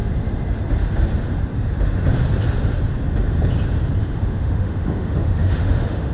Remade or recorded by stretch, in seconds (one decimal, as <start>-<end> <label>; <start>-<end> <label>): 0.0-4.0 recorded; 4.0-6.1 remade